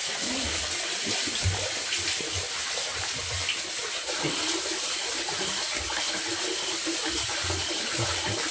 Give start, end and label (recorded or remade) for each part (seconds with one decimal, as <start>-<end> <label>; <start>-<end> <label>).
0.0-8.5 recorded